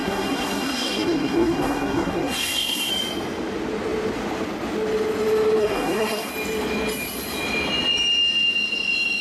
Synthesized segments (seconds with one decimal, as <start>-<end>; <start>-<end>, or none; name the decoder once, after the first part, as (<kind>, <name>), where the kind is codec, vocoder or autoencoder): 0.0-2.9 (codec, SNAC); 5.6-6.3